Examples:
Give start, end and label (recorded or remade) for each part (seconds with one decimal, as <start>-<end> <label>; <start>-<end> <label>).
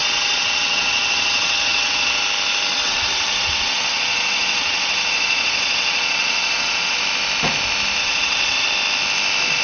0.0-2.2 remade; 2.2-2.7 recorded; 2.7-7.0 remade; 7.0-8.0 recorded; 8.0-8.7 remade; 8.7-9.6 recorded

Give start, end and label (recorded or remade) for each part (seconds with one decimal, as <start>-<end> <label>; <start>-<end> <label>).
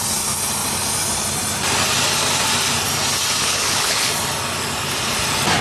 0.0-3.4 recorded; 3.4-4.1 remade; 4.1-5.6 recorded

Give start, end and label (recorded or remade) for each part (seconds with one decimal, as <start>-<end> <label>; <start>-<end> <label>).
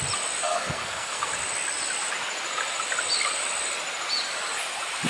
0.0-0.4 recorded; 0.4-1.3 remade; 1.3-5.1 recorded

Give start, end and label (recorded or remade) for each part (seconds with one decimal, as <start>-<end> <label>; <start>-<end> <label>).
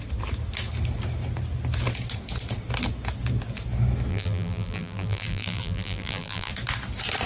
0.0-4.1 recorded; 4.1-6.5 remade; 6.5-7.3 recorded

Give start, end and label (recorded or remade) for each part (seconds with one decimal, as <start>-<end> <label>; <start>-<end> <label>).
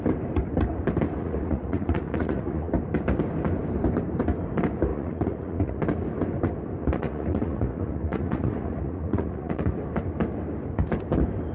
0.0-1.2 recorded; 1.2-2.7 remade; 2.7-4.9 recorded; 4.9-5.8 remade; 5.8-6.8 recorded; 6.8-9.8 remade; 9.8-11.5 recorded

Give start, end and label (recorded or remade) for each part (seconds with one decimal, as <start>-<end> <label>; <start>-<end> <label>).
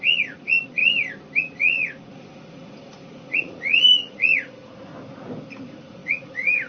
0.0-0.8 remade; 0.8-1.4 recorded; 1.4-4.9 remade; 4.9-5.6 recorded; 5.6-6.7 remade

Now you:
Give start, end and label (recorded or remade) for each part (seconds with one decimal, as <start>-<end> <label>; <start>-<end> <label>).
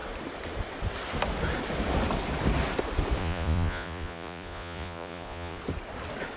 0.0-3.2 recorded; 3.2-5.6 remade; 5.6-6.4 recorded